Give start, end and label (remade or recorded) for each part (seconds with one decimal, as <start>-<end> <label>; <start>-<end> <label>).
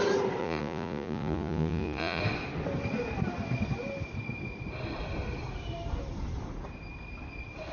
0.0-0.4 recorded; 0.4-2.2 remade; 2.2-7.7 recorded